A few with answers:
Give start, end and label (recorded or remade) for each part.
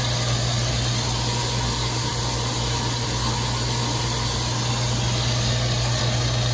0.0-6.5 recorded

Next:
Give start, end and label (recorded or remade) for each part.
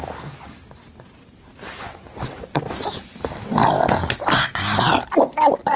0.0-5.8 recorded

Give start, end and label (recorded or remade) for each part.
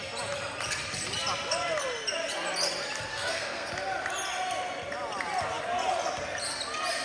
0.0-3.1 recorded; 3.1-3.7 remade; 3.7-7.0 recorded